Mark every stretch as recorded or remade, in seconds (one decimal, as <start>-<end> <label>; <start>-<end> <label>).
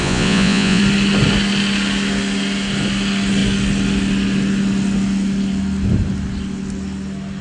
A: 0.0-0.8 remade; 0.8-7.4 recorded